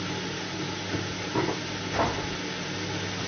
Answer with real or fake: real